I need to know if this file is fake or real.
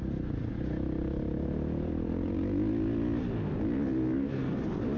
real